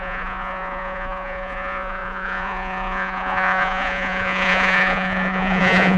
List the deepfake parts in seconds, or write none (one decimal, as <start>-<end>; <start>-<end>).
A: 0.0-6.0